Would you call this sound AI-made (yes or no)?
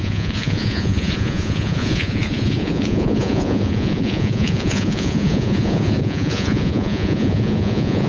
yes